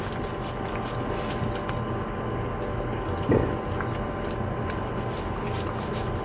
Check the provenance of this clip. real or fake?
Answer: real